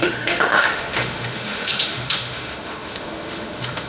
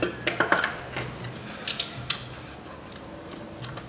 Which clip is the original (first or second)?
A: second